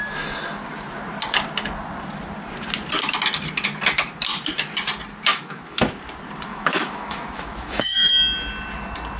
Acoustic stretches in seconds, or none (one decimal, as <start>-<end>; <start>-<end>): 0.0-5.3; 6.0-6.5; 8.1-9.2